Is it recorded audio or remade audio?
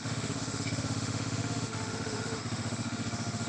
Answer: remade